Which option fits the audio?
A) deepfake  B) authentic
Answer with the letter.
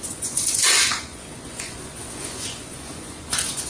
A